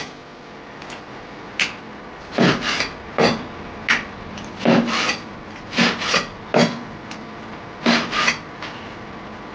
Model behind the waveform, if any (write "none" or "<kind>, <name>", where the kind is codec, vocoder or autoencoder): none